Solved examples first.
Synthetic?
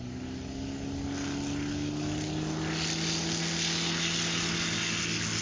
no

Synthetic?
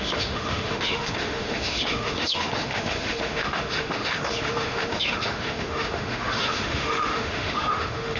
yes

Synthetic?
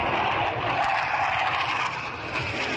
no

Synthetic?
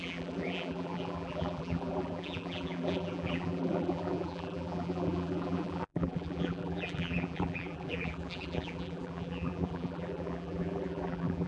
yes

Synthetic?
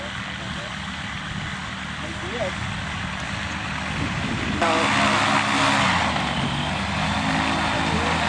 no